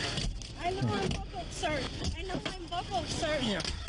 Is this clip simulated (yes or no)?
no